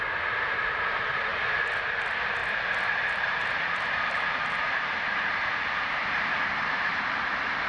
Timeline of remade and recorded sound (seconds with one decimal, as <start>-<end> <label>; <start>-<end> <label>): 0.0-1.3 remade; 1.3-2.0 recorded; 2.0-2.4 remade; 2.4-3.1 recorded; 3.1-5.4 remade; 5.4-6.7 recorded; 6.7-7.7 remade

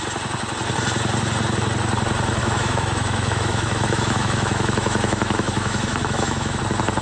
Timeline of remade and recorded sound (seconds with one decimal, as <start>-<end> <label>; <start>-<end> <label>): 0.0-2.4 recorded; 2.4-6.6 remade; 6.6-7.0 recorded

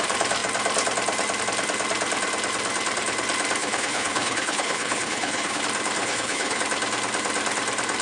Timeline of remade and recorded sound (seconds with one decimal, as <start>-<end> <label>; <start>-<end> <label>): 0.0-3.6 recorded; 3.6-5.6 remade; 5.6-6.0 recorded; 6.0-6.6 remade; 6.6-8.0 recorded

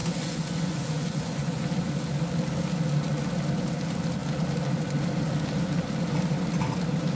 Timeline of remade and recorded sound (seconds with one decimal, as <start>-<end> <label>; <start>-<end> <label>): 0.0-1.6 remade; 1.6-7.2 recorded

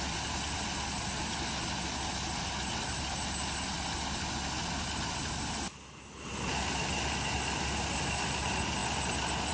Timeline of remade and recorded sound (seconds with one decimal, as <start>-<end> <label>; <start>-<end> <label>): 0.0-9.5 recorded